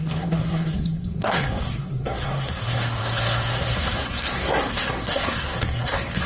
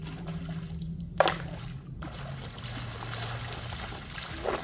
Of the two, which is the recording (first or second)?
second